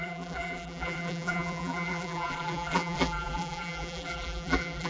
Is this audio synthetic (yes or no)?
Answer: yes